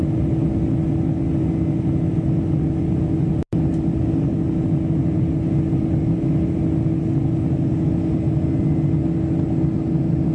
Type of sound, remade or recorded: recorded